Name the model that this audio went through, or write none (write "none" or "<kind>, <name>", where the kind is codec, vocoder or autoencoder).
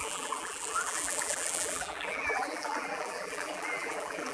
vocoder, BigVGAN v2